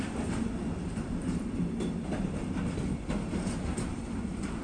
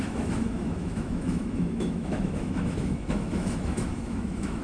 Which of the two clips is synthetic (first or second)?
second